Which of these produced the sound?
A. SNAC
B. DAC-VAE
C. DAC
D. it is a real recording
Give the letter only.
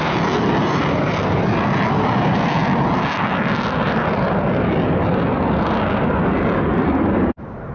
D